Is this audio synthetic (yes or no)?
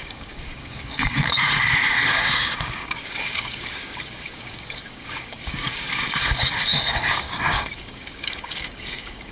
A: yes